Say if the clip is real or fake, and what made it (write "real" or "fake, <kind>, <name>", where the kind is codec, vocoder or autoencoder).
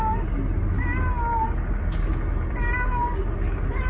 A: real